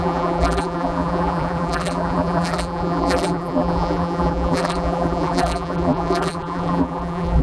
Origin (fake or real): fake